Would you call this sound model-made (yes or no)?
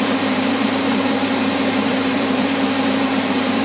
yes